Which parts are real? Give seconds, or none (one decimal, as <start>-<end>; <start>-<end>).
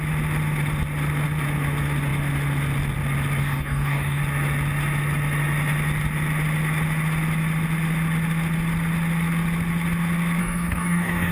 0.0-3.4; 4.2-10.4